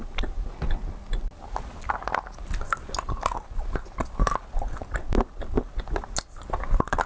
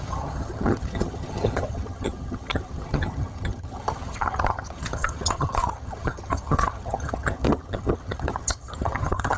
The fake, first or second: second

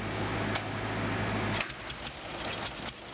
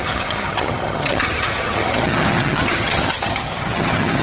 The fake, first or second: second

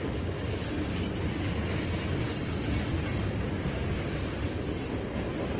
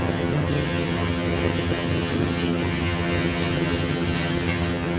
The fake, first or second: second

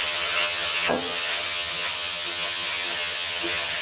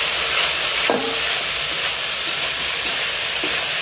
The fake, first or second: first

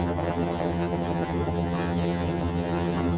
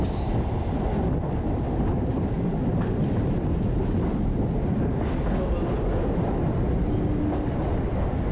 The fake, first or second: first